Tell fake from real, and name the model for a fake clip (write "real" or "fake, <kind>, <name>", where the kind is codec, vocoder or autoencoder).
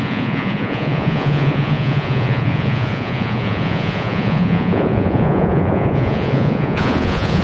fake, vocoder, Vocos